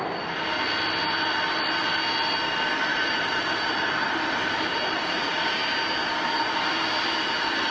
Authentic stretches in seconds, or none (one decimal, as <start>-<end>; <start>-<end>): 0.0-2.9; 5.1-7.7